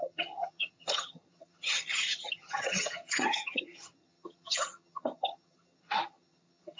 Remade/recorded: remade